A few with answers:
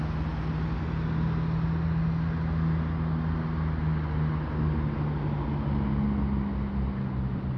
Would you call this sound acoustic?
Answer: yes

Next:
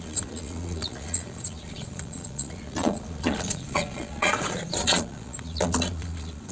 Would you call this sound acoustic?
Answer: no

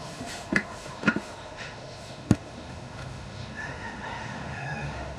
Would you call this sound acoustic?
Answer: no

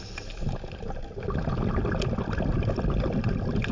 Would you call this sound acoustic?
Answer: yes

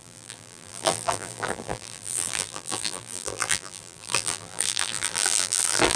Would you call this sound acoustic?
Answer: no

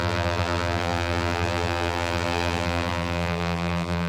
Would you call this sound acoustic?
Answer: no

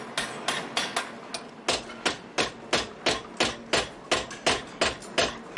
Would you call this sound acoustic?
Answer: yes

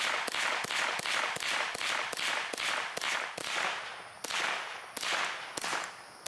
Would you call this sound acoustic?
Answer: yes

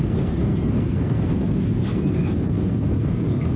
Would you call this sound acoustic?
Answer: no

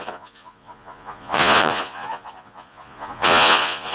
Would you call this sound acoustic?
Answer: no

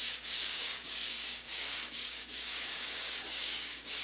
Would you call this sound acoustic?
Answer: no